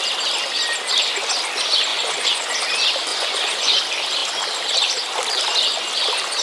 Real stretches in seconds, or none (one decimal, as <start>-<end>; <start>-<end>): 0.0-1.9; 2.5-3.1; 3.8-6.4